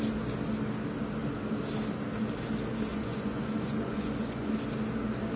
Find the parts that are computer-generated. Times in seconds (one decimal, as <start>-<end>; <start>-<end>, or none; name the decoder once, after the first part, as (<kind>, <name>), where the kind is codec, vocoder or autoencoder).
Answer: 2.9-4.5 (vocoder, Vocos)